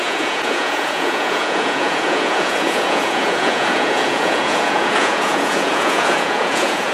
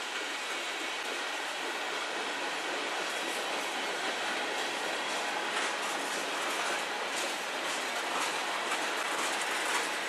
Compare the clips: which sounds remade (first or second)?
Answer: first